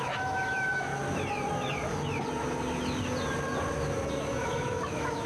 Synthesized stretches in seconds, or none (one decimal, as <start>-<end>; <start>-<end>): 0.0-0.9; 4.1-5.3